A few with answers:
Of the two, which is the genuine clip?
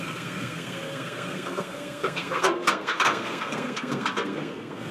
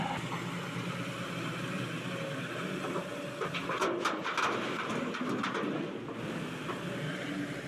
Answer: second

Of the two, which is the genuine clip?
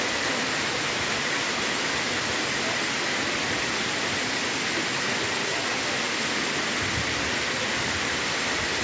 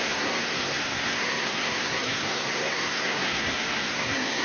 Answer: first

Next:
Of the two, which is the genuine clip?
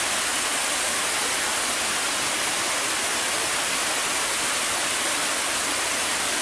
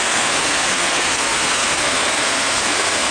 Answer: first